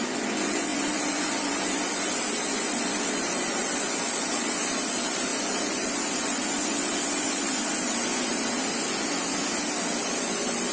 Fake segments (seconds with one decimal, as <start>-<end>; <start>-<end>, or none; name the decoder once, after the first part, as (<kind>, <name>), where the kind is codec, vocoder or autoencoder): 0.0-9.2 (vocoder, Vocos); 10.0-10.7